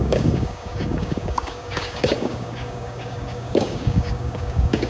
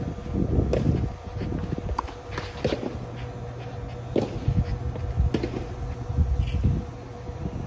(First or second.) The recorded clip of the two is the second